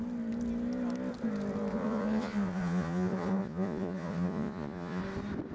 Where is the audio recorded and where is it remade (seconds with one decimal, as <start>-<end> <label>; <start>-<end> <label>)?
0.0-1.7 recorded; 1.7-5.0 remade; 5.0-5.5 recorded